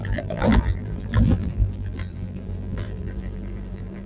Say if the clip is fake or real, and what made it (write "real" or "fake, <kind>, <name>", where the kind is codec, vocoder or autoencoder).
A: fake, vocoder, BigVGAN v2